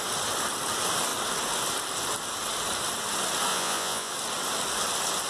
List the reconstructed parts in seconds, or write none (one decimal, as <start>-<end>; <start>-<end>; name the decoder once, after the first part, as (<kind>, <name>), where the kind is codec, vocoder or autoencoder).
3.5-4.1 (vocoder, Vocos)